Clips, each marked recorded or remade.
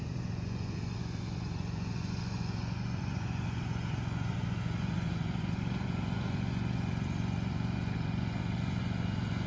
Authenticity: remade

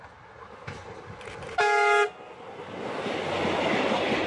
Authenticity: recorded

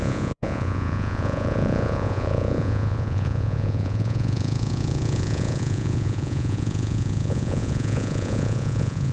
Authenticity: remade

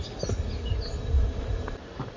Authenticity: recorded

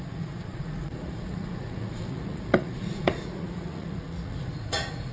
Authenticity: remade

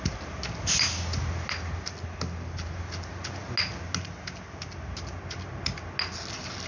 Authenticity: recorded